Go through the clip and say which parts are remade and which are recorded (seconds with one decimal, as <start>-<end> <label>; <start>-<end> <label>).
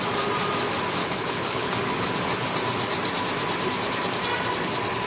0.0-1.0 recorded; 1.0-1.7 remade; 1.7-5.1 recorded